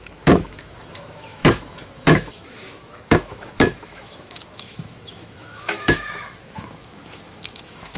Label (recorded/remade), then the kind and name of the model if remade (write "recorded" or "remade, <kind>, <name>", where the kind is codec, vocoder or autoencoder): remade, autoencoder, DAC-VAE